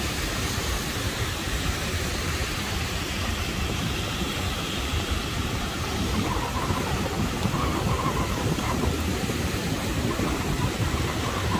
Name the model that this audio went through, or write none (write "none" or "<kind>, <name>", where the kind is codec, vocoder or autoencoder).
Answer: vocoder, BigVGAN v2